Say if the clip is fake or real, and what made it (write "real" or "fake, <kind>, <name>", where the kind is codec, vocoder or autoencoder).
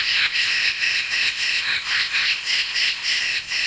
fake, codec, ZipCodec